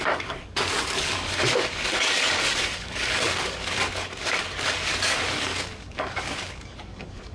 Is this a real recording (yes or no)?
no